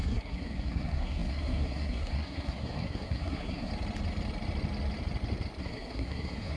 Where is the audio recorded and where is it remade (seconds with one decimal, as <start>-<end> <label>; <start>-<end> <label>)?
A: 0.0-3.7 remade; 3.7-5.6 recorded; 5.6-6.6 remade